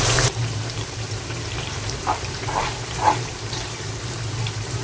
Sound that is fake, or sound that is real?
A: fake